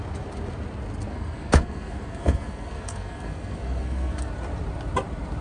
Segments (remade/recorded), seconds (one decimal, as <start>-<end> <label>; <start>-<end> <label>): 0.0-1.1 recorded; 1.1-4.3 remade; 4.3-5.4 recorded